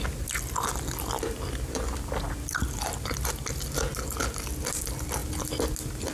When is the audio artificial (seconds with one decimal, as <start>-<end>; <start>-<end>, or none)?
none